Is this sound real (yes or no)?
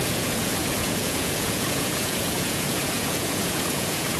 no